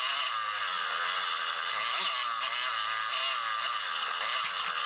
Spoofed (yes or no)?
no